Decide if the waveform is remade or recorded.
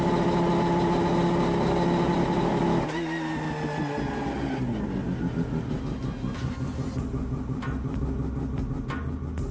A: recorded